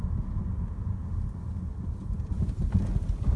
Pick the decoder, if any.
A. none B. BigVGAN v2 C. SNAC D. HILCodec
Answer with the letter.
A